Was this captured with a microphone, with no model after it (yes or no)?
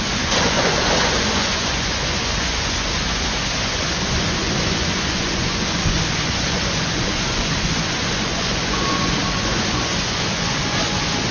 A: no